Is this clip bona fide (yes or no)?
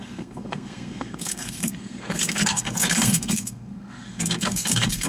no